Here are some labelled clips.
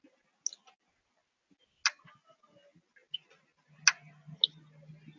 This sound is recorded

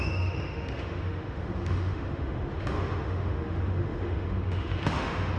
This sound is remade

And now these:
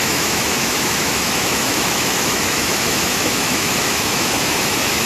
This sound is remade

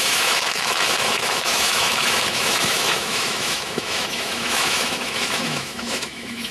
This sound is remade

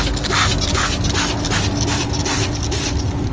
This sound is recorded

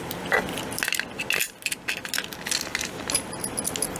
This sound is recorded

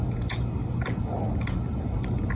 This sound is recorded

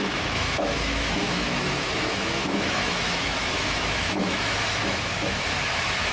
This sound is remade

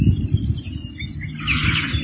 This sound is recorded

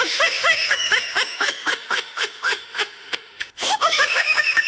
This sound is remade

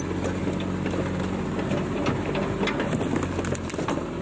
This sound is recorded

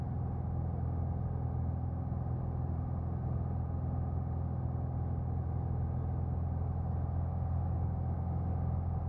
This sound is recorded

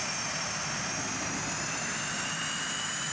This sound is recorded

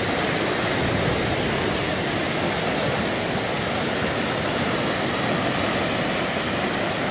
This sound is recorded